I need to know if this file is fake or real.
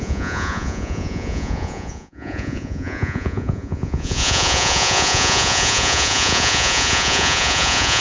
fake